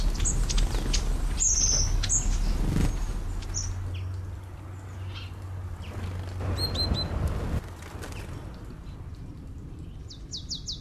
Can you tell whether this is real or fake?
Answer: real